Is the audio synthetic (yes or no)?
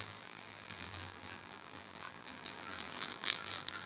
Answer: yes